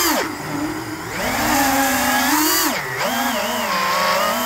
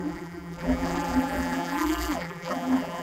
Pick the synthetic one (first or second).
second